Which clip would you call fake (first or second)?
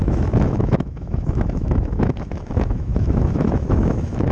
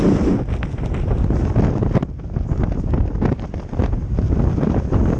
first